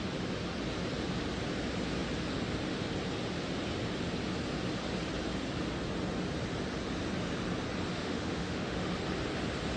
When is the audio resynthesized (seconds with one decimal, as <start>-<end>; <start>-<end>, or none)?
7.9-8.9